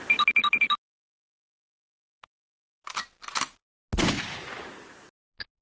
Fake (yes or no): no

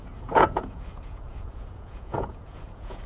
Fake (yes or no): yes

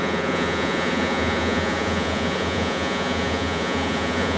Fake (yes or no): yes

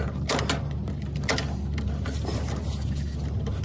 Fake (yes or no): no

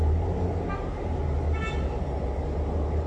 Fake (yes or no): no